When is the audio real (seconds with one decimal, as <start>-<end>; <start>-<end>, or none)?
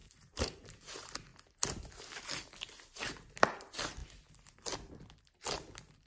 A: 0.7-6.1